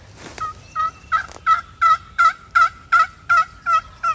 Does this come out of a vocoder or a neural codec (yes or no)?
no